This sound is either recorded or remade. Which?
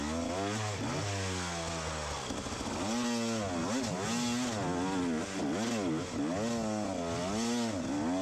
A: recorded